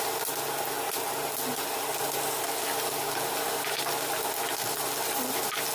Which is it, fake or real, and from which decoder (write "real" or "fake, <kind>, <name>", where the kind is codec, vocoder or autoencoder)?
real